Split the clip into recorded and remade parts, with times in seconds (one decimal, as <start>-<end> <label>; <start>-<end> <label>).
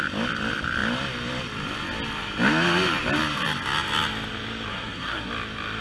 0.0-4.7 recorded; 4.7-5.3 remade; 5.3-5.8 recorded